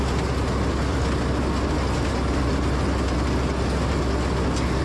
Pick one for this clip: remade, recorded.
recorded